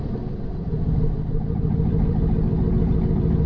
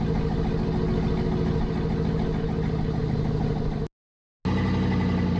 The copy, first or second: first